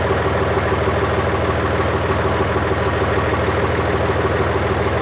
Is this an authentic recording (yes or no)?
yes